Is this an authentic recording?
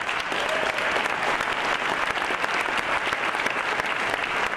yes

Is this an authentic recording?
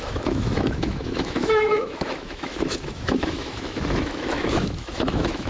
no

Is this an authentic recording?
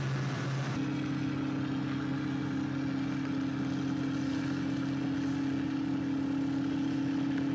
yes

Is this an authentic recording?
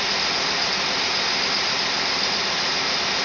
yes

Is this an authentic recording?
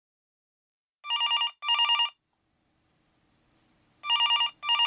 yes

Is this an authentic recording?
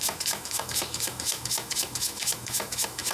no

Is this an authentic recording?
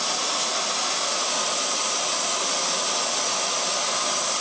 yes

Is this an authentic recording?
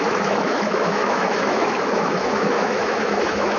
no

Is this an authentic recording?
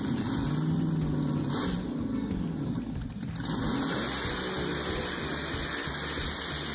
yes